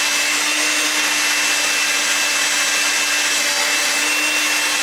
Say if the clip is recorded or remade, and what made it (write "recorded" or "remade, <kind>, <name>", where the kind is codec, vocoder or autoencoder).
recorded